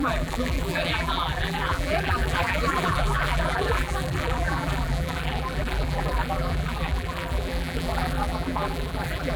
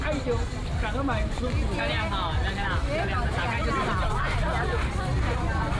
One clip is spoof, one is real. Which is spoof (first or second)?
first